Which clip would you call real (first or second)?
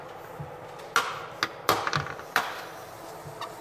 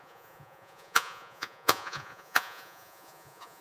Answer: first